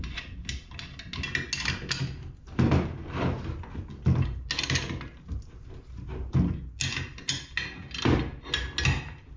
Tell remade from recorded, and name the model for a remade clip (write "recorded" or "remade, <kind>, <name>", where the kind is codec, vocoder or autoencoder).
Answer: recorded